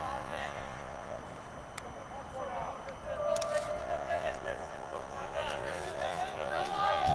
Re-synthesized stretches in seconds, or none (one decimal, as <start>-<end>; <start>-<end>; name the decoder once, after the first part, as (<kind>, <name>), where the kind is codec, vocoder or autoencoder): 0.0-1.2 (vocoder, Vocos); 3.8-7.1

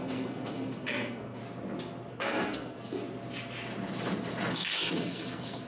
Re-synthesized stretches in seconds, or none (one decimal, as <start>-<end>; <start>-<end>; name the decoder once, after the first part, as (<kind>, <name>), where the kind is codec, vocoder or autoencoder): 0.0-1.4 (codec, SNAC); 2.1-3.0; 4.5-5.7